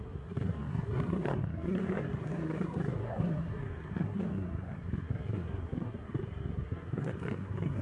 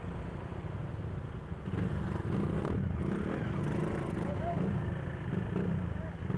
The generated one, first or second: first